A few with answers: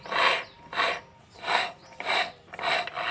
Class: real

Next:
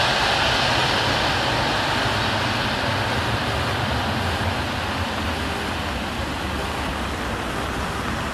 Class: real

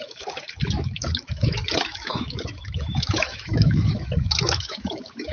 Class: fake